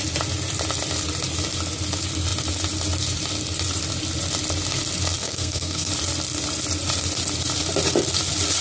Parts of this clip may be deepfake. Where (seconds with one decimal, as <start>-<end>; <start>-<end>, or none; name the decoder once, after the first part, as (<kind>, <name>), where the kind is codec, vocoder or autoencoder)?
5.2-5.9 (codec, SNAC)